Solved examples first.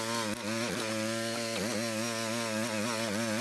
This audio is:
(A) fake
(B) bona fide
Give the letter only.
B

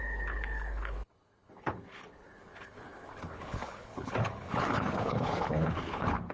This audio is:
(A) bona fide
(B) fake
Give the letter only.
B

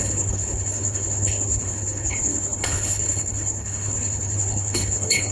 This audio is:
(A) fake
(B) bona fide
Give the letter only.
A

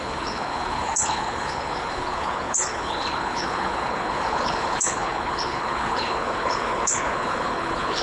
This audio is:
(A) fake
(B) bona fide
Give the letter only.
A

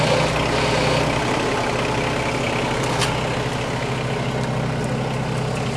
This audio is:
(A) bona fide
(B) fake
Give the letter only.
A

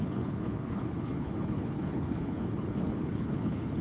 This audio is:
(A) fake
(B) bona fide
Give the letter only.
A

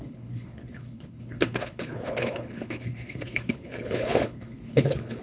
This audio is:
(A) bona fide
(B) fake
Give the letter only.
B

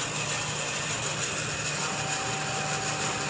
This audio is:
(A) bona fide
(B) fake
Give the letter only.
A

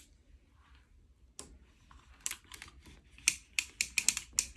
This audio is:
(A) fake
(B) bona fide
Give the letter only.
B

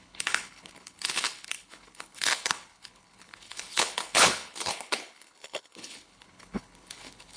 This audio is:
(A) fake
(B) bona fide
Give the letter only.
A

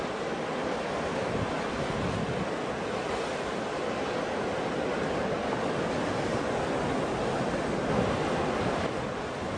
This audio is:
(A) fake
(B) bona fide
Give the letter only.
B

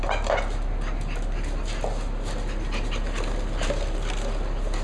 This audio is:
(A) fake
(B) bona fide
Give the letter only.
B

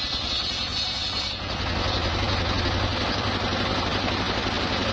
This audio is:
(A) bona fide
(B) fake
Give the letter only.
A